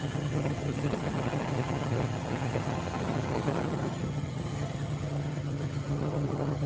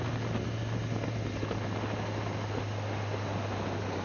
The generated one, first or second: first